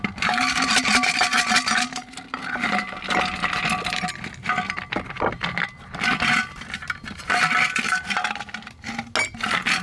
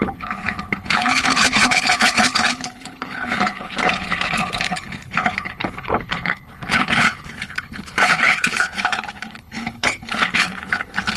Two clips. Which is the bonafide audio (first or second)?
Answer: first